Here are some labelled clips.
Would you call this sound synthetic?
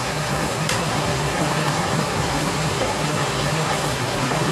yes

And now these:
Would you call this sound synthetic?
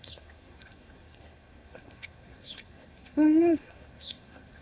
yes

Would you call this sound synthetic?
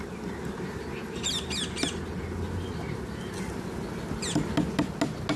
no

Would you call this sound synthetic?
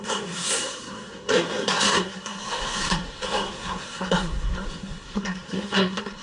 yes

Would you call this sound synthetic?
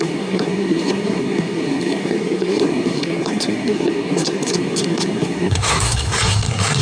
yes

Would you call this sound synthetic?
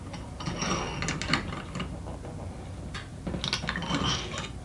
no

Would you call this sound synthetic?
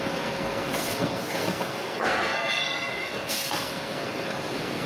yes